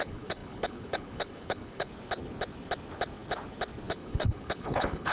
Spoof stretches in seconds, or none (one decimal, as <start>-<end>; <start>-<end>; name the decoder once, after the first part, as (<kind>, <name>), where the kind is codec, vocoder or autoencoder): 0.0-1.9 (codec, HILCodec); 3.9-5.1